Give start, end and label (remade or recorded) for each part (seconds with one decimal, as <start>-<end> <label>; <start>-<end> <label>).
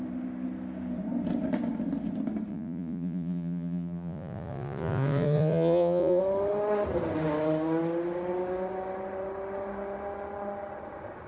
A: 0.0-2.5 recorded; 2.5-6.2 remade; 6.2-11.3 recorded